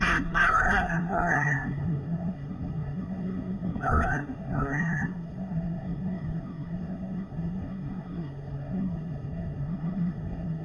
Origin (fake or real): fake